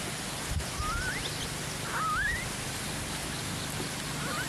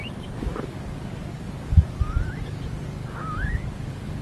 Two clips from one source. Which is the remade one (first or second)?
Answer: second